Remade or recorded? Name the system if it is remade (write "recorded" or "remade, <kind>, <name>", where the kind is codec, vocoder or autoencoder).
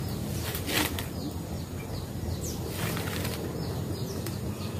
recorded